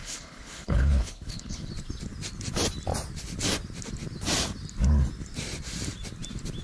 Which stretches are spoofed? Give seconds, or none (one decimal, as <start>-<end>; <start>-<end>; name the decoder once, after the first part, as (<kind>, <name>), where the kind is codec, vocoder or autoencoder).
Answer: 0.0-1.7 (codec, HILCodec)